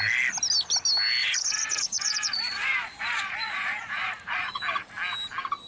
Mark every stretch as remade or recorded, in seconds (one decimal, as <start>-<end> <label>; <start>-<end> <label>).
0.0-1.2 recorded; 1.2-4.6 remade; 4.6-5.7 recorded